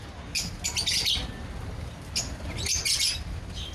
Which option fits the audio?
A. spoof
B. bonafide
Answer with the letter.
B